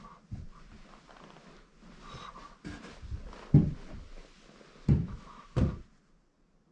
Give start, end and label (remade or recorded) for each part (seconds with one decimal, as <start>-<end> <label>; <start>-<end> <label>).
0.0-5.0 recorded; 5.0-5.6 remade; 5.6-6.7 recorded

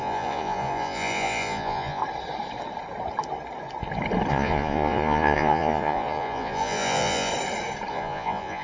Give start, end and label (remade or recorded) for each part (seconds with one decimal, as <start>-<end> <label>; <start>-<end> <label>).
0.0-2.0 remade; 2.0-4.3 recorded; 4.3-7.3 remade; 7.3-7.9 recorded; 7.9-8.6 remade

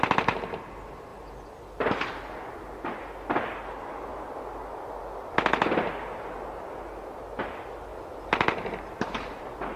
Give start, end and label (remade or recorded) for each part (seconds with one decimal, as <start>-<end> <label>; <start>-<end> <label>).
0.0-9.8 recorded